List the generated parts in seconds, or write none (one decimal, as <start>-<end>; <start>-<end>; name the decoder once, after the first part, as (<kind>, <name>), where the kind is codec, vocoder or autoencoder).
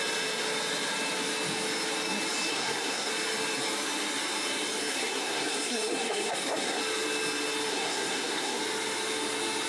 2.5-3.1 (codec, SNAC); 4.9-6.8; 7.7-8.6